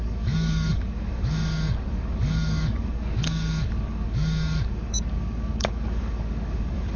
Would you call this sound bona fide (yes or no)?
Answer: no